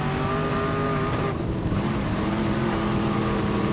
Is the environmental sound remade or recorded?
remade